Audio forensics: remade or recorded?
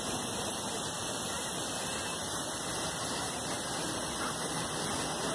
recorded